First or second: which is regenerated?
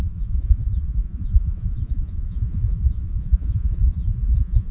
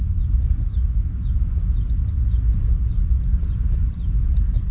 first